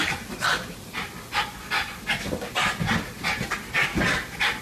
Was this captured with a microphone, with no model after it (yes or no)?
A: yes